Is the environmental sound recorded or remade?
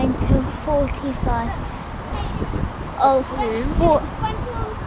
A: recorded